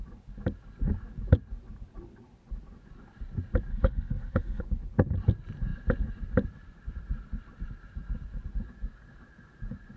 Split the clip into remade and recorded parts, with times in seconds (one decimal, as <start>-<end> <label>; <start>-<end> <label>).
0.0-3.7 recorded; 3.7-4.6 remade; 4.6-10.0 recorded